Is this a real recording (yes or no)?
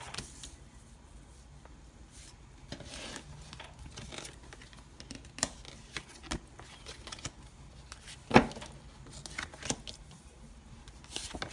yes